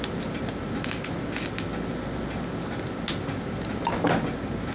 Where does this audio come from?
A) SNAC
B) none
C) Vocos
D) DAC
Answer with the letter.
B